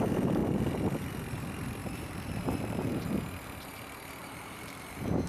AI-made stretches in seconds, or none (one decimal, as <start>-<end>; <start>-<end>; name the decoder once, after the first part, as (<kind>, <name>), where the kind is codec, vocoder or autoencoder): 1.8-3.2 (vocoder, BigVGAN v2); 4.2-5.3